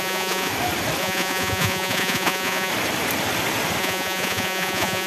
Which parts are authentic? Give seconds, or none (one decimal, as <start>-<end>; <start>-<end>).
0.5-1.0; 2.7-3.8